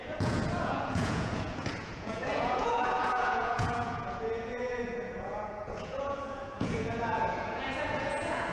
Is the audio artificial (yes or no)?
yes